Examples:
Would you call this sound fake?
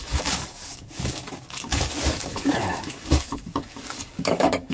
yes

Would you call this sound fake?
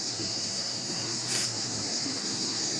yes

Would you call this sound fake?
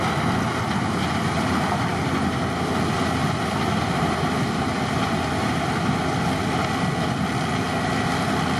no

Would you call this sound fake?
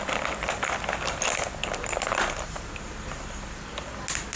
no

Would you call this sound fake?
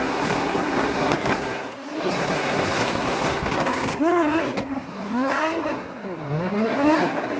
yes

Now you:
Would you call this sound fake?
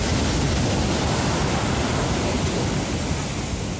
no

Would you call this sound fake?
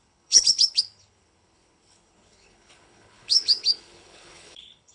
yes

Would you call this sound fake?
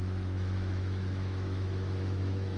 yes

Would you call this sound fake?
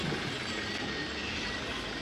no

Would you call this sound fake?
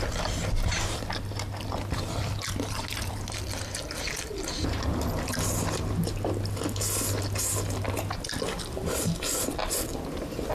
no